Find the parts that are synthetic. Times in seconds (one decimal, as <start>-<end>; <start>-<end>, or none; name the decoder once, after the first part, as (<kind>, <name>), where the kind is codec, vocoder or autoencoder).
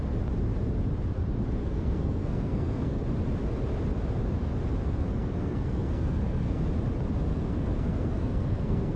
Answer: 1.6-3.0 (codec, SNAC); 4.8-6.6; 7.3-9.0